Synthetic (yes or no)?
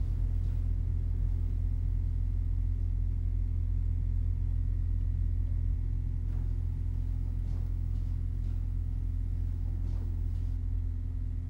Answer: no